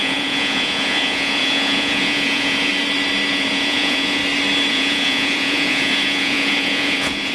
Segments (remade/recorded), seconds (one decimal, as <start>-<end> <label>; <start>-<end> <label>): 0.0-2.7 remade; 2.7-3.3 recorded; 3.3-4.2 remade; 4.2-4.7 recorded; 4.7-7.3 remade